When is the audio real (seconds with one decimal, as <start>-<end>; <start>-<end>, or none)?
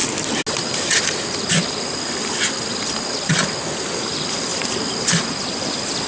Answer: 0.0-6.1